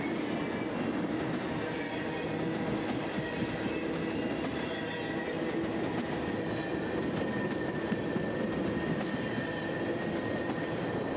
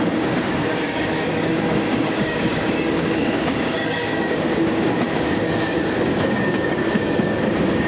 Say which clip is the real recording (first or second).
first